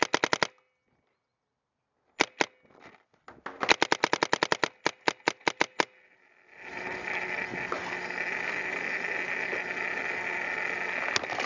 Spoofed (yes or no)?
no